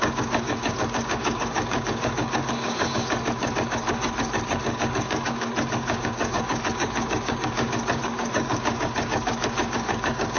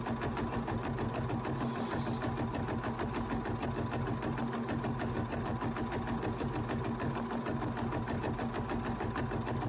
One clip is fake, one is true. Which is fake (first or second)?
first